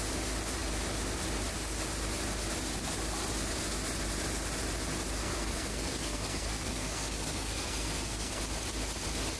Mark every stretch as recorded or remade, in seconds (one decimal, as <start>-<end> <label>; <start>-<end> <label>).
0.0-5.2 recorded; 5.2-8.4 remade; 8.4-9.4 recorded